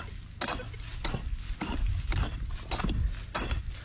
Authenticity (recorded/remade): recorded